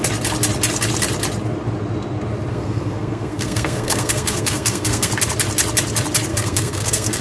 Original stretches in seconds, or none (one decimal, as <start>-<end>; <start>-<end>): 0.0-2.5; 5.1-6.3